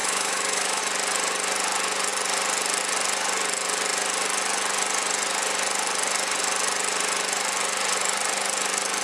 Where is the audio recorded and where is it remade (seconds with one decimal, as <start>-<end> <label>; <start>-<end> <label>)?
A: 0.0-0.8 remade; 0.8-9.0 recorded